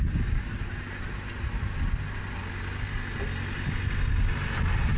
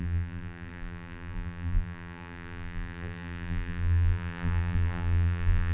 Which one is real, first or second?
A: first